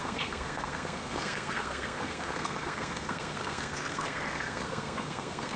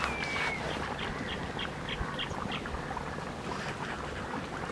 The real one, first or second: second